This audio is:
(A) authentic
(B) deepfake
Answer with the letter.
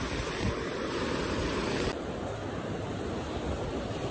A